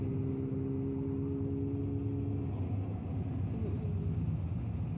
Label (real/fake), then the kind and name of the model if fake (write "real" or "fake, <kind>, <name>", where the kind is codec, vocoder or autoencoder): real